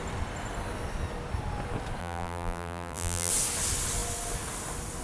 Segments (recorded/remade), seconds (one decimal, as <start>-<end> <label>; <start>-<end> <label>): 0.0-2.0 recorded; 2.0-3.3 remade; 3.3-5.0 recorded